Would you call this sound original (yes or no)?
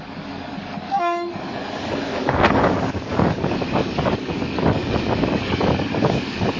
no